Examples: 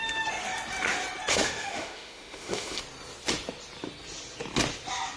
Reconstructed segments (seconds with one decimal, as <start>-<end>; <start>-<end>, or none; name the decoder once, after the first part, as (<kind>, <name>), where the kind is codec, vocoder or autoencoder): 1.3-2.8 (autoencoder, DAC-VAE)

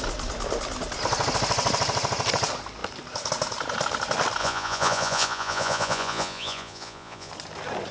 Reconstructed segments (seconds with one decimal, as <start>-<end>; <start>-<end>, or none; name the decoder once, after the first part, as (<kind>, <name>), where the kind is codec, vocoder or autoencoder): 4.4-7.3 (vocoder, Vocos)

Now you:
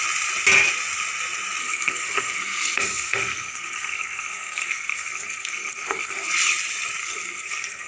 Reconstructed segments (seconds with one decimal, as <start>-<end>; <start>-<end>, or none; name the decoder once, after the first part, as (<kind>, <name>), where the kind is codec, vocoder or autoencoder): 1.6-6.3 (codec, SNAC); 7.0-7.9